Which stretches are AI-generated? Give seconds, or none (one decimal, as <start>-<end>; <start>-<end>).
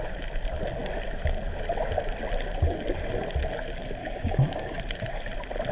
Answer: 4.0-4.8